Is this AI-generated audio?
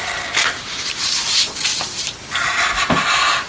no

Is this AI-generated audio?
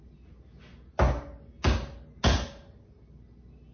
no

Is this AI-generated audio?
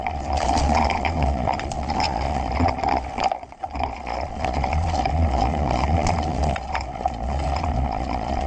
yes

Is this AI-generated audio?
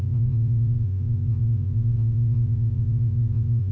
yes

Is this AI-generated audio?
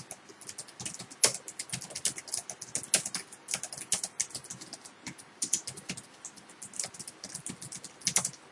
no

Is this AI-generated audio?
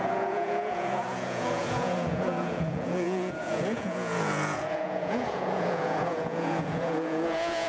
yes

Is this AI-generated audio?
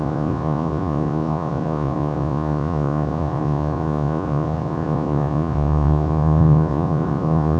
yes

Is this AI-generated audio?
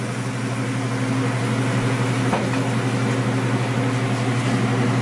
no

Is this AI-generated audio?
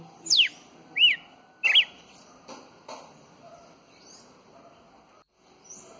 no